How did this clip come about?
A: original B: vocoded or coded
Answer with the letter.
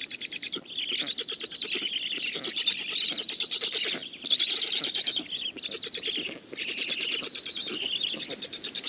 A